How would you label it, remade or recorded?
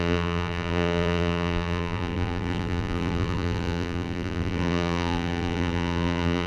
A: remade